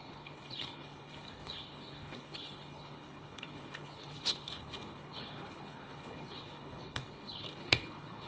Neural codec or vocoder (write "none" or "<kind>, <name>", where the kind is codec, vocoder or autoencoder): codec, HILCodec